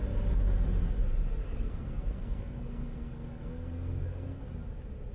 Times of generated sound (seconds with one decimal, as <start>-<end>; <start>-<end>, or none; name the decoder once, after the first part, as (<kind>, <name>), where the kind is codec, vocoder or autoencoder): 1.4-4.4 (codec, SNAC)